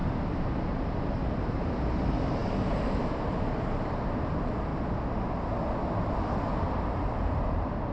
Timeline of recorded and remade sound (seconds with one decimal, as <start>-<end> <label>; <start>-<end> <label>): 0.0-0.7 recorded; 0.7-4.7 remade; 4.7-6.4 recorded; 6.4-7.9 remade